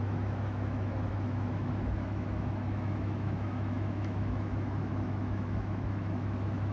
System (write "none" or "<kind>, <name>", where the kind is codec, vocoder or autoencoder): autoencoder, DAC-VAE